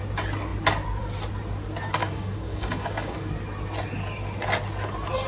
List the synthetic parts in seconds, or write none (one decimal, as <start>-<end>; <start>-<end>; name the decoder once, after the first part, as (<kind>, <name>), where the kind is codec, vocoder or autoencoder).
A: 2.0-3.3 (codec, DAC)